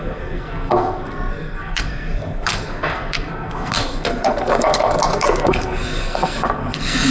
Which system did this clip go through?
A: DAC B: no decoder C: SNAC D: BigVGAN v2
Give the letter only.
C